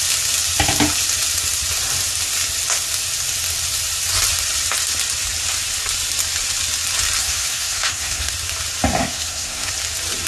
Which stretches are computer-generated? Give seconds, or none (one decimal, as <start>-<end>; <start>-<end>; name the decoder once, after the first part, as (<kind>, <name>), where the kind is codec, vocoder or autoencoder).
7.2-8.3 (codec, SNAC); 9.0-9.7